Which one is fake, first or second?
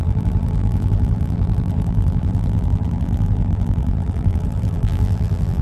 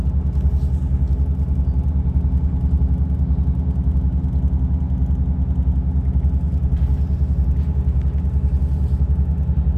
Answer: first